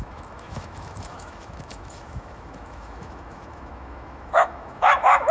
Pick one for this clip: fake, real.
fake